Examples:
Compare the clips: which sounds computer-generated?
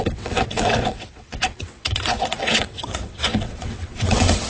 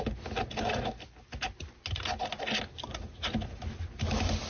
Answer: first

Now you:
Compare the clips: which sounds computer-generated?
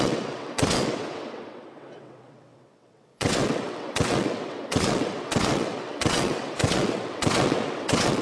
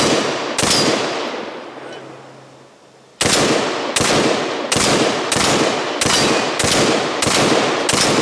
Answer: first